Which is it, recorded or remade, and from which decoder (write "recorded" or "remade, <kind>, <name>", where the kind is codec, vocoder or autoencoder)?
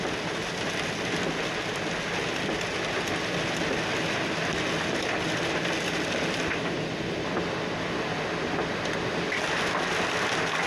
recorded